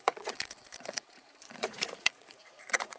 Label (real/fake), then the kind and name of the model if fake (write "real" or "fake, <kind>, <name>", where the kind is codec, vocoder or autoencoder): fake, vocoder, Vocos